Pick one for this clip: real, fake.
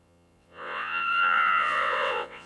fake